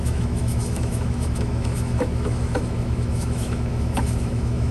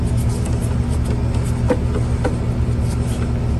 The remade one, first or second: first